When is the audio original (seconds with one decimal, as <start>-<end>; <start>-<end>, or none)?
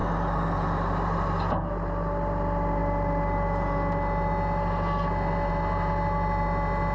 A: 0.0-6.9